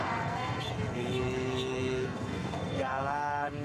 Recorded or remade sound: remade